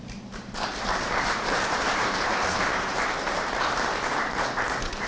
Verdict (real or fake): fake